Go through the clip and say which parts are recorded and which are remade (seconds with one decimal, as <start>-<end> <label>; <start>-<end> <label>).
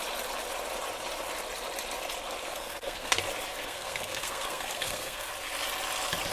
0.0-2.4 recorded; 2.4-3.2 remade; 3.2-3.6 recorded; 3.6-5.3 remade; 5.3-6.3 recorded